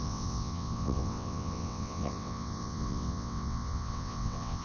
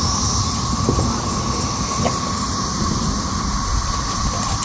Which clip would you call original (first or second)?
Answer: second